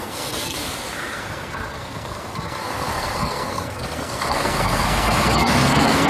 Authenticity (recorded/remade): remade